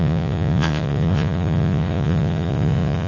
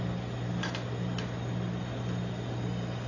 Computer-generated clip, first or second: first